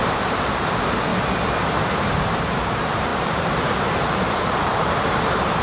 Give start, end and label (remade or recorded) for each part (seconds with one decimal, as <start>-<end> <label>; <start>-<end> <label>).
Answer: 0.0-1.1 remade; 1.1-1.9 recorded; 1.9-5.6 remade